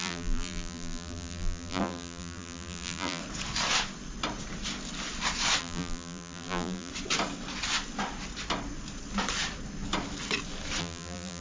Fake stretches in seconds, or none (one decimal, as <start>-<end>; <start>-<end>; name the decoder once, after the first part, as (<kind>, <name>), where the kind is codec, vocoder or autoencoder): 0.0-3.2 (vocoder, BigVGAN v2); 5.6-6.9; 10.8-11.4